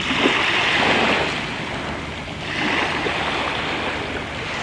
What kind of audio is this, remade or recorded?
recorded